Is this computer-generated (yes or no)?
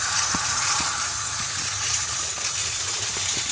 yes